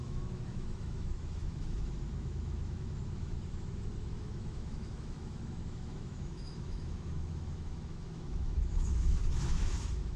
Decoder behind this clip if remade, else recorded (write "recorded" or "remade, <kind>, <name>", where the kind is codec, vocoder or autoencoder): remade, autoencoder, DAC-VAE